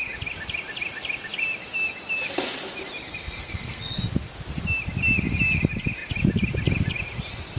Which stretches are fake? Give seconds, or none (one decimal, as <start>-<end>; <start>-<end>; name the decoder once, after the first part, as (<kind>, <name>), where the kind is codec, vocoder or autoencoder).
3.0-4.0 (codec, SNAC)

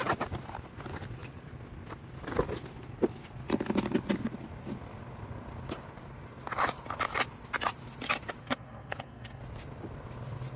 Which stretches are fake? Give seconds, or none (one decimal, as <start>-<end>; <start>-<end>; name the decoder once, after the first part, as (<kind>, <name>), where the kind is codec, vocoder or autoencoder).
8.4-9.4 (codec, SNAC)